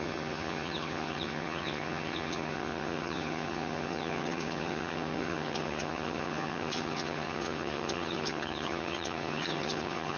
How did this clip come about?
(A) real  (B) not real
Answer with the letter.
B